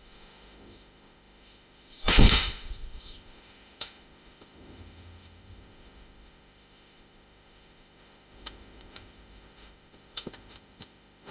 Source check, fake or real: fake